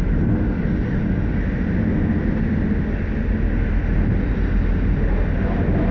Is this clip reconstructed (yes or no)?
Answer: no